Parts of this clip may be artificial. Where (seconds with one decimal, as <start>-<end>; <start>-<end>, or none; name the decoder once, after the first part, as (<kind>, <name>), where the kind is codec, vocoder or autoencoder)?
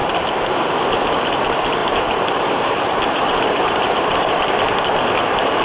1.8-4.5 (vocoder, BigVGAN v2)